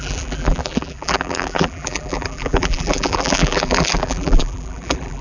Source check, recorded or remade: remade